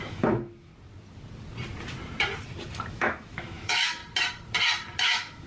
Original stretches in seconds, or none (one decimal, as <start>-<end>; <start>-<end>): 0.7-2.9; 4.0-5.0